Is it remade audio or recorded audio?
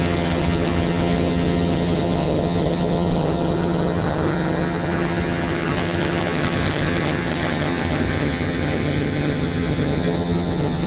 remade